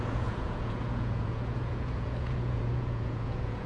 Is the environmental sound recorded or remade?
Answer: remade